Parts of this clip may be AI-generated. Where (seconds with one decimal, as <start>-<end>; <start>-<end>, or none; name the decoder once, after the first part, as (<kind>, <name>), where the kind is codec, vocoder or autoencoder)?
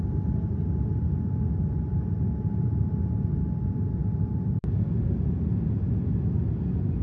4.0-4.5 (vocoder, BigVGAN v2)